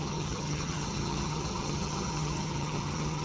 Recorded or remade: remade